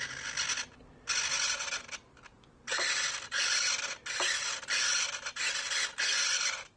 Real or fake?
real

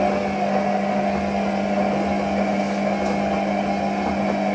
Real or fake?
real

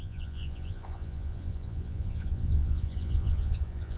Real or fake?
fake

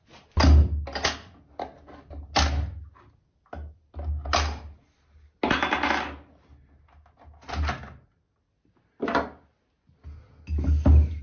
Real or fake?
real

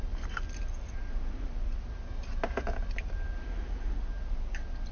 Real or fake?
real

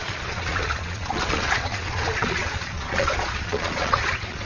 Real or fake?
fake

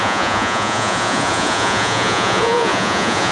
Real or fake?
fake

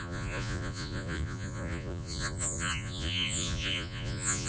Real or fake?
fake